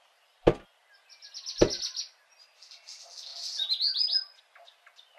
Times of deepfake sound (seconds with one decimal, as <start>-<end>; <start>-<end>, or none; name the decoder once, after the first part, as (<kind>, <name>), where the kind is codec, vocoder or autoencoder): none